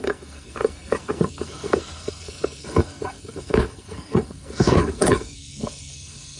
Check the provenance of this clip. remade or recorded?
remade